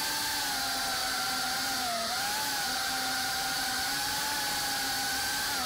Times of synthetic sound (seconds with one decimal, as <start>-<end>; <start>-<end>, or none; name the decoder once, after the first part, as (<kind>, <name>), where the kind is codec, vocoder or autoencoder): 1.0-4.4 (vocoder, BigVGAN v2)